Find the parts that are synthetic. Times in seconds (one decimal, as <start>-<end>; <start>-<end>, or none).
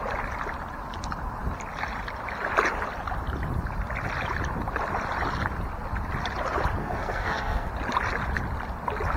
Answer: 6.8-7.7